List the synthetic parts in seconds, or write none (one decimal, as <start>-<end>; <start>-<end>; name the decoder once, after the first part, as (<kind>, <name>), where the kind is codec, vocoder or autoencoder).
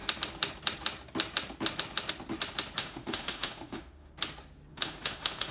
2.8-4.1 (autoencoder, DAC-VAE); 4.7-5.5